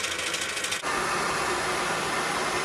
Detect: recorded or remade recorded